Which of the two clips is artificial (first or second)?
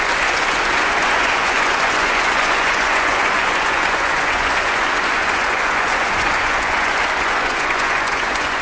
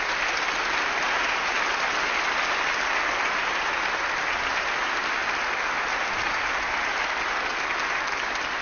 first